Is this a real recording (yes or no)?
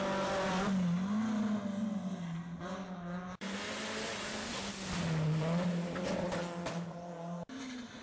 yes